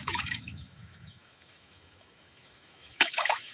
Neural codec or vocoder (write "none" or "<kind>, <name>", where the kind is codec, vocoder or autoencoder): autoencoder, DAC-VAE